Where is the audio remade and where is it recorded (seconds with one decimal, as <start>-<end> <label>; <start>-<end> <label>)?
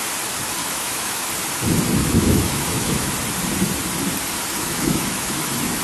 0.0-0.6 recorded; 0.6-1.3 remade; 1.3-2.0 recorded; 2.0-3.1 remade; 3.1-4.5 recorded; 4.5-5.8 remade